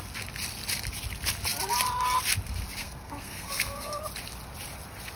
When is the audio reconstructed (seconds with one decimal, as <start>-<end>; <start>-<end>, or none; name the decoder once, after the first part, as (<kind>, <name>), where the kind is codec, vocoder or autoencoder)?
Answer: 2.8-4.0 (codec, SNAC)